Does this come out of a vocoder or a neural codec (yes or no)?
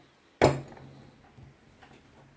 no